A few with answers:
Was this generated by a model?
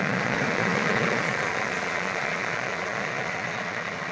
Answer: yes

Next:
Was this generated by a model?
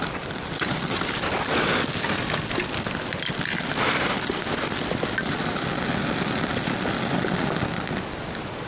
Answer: no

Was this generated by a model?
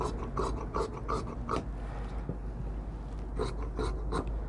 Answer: no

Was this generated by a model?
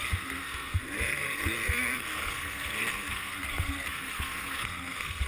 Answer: yes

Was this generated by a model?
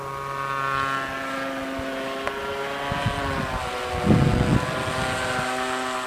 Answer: no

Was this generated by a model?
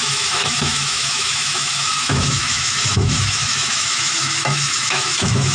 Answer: yes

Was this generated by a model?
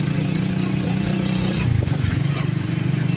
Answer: yes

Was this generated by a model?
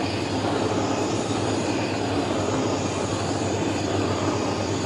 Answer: no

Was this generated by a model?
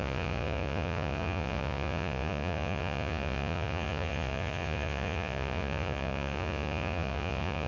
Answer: yes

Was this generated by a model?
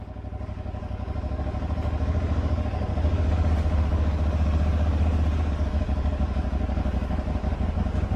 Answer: yes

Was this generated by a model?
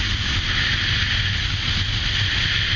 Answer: no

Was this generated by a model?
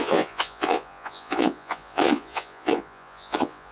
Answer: yes